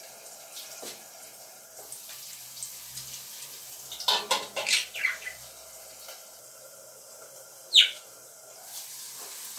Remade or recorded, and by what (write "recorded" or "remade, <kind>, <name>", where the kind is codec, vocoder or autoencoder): remade, vocoder, BigVGAN v2